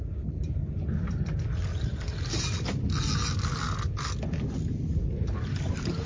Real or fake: real